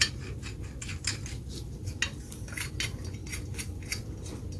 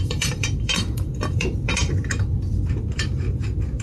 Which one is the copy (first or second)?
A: second